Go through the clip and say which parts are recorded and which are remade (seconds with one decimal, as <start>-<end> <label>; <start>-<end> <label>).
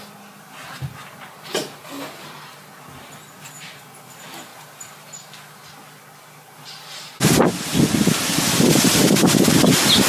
0.0-10.1 recorded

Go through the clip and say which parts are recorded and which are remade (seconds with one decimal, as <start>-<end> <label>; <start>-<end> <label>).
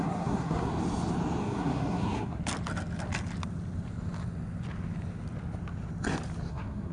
0.0-0.7 remade; 0.7-1.4 recorded; 1.4-2.4 remade; 2.4-6.5 recorded; 6.5-6.9 remade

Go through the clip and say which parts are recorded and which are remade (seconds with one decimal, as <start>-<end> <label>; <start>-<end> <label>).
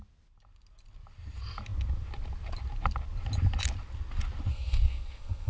0.0-4.5 recorded; 4.5-5.5 remade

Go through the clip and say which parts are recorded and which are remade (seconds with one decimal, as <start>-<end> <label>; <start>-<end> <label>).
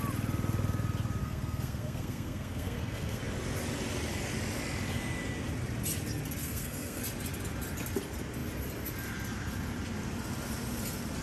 0.0-1.2 recorded; 1.2-3.2 remade; 3.2-6.4 recorded; 6.4-7.0 remade; 7.0-11.2 recorded